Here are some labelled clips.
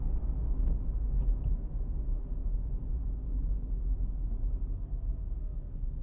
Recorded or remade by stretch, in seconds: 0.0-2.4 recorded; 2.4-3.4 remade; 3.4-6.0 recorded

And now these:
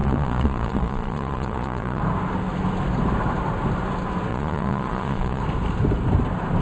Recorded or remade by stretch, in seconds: 0.0-2.0 remade; 2.0-4.3 recorded; 4.3-5.4 remade; 5.4-6.6 recorded

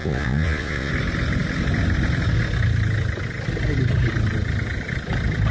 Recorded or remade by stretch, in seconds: 0.0-0.9 remade; 0.9-5.5 recorded

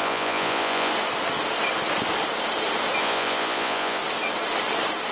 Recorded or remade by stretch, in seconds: 0.0-0.9 remade; 0.9-3.0 recorded; 3.0-4.0 remade; 4.0-5.1 recorded

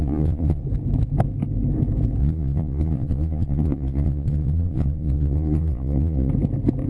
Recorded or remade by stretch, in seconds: 0.0-0.6 remade; 0.6-2.2 recorded; 2.2-6.3 remade; 6.3-6.9 recorded

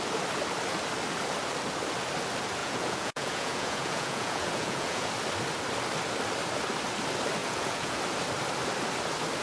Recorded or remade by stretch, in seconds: 0.0-2.6 recorded; 2.6-5.1 remade; 5.1-7.4 recorded; 7.4-8.0 remade; 8.0-9.4 recorded